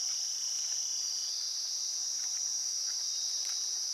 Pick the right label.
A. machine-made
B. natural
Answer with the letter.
A